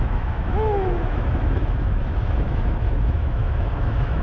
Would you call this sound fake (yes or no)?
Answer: yes